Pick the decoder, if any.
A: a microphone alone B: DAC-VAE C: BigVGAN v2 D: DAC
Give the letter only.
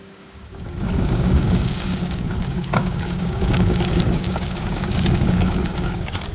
D